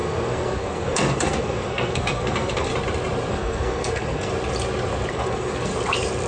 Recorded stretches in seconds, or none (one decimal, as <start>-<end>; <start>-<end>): 2.7-3.3; 4.3-5.1; 5.7-6.3